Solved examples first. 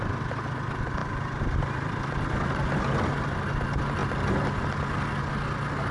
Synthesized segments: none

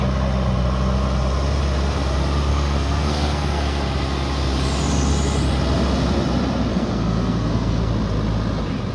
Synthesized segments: 2.5-3.8 (codec, SNAC); 6.7-7.9

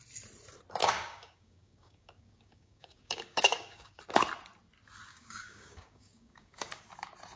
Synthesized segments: 0.8-4.0 (codec, DAC); 5.1-6.8

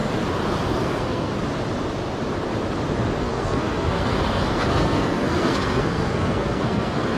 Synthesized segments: 0.8-1.3 (codec, SNAC); 3.2-7.2